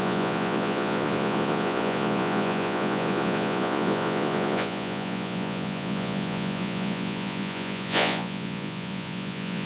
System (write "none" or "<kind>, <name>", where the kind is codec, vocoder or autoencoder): vocoder, Vocos